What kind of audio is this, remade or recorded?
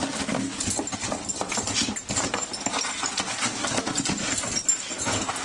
recorded